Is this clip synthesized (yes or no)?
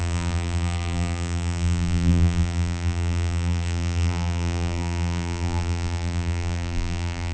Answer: yes